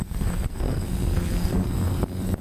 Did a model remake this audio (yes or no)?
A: yes